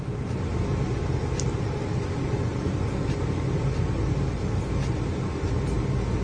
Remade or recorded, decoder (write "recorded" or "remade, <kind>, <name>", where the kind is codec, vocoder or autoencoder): recorded